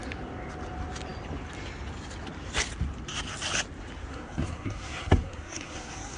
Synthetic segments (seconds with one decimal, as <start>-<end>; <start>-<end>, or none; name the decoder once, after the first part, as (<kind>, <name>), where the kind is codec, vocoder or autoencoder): 4.1-6.2 (codec, SNAC)